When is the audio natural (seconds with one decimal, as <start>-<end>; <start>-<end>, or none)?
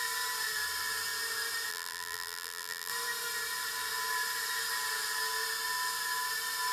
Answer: 0.0-1.7; 2.9-6.7